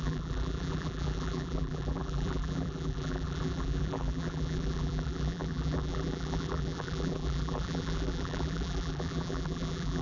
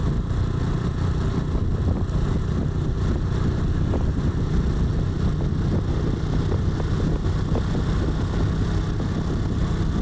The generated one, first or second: first